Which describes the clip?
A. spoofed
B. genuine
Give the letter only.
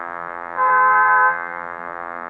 A